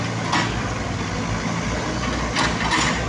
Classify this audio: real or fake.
real